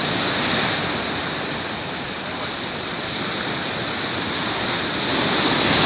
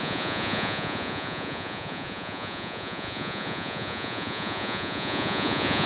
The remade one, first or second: second